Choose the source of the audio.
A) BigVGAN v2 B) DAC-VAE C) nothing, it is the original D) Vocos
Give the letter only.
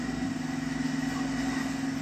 C